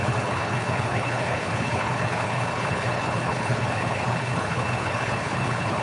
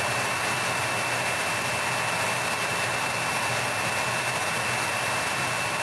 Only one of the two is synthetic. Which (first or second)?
first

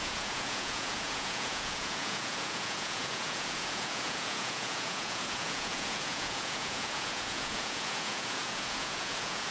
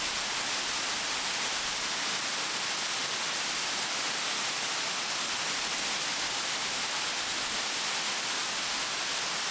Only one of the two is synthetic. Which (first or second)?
first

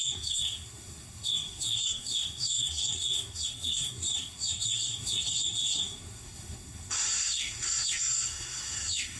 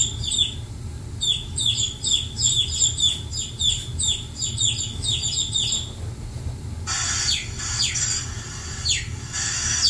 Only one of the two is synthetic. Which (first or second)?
first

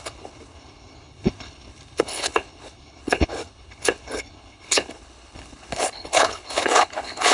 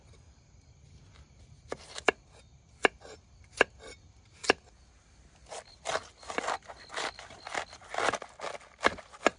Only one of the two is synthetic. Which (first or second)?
first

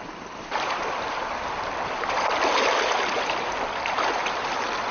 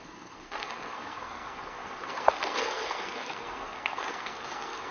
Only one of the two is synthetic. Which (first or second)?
second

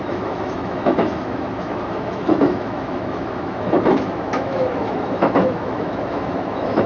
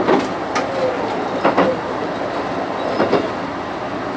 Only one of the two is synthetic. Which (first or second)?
first